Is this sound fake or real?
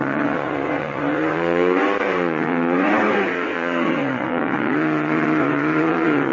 fake